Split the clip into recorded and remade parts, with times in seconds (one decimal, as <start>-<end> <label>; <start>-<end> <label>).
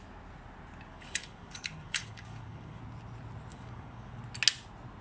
0.0-0.9 recorded; 0.9-2.8 remade; 2.8-3.5 recorded; 3.5-4.2 remade; 4.2-5.0 recorded